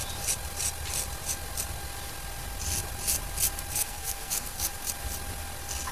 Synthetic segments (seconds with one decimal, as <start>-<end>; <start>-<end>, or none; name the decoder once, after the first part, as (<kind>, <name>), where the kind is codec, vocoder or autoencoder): 3.7-4.7 (codec, SNAC)